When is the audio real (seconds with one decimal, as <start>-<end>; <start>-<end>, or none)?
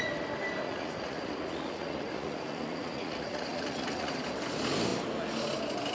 0.0-0.6; 4.1-5.9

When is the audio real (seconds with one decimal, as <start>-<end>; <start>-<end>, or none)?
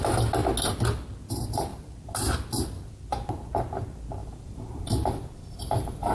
0.0-4.2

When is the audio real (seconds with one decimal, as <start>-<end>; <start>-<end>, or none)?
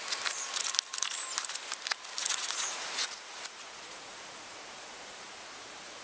0.0-2.2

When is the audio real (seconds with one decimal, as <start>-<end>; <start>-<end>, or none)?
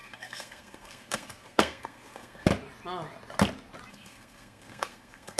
2.5-3.9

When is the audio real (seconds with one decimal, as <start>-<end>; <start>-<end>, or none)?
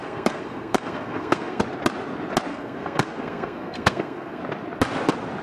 1.6-2.5; 4.4-5.4